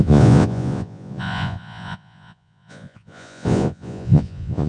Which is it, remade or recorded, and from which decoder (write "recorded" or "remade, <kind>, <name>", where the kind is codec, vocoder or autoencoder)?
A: remade, vocoder, Vocos